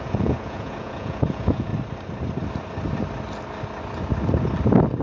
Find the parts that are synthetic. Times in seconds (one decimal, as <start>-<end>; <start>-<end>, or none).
0.0-1.7